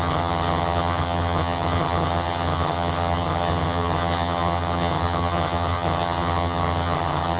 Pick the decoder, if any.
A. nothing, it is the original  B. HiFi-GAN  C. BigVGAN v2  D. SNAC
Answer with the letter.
B